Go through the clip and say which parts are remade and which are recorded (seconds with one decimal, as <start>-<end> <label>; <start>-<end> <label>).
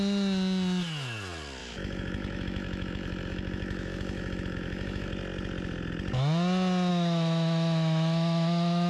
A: 0.0-1.6 recorded; 1.6-5.1 remade; 5.1-6.9 recorded; 6.9-8.9 remade